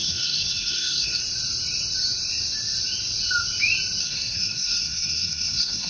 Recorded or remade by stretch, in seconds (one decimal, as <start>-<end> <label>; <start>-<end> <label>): 0.0-1.2 remade; 1.2-4.0 recorded; 4.0-5.9 remade